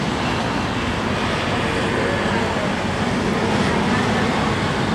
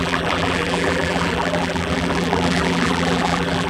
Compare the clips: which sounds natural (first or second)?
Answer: first